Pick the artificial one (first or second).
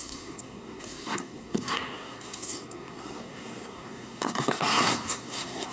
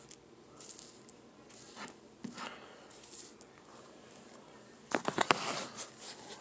first